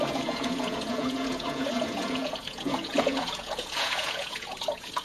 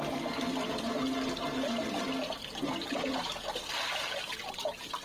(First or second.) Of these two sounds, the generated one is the first